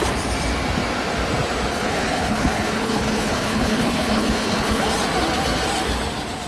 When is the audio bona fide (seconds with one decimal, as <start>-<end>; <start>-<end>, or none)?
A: 0.0-1.7; 4.9-6.5